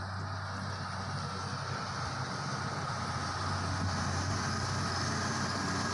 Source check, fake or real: real